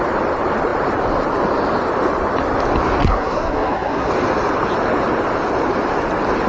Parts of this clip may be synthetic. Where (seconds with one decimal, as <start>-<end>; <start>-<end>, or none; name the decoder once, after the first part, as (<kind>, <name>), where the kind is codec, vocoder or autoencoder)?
3.0-4.1 (codec, SNAC)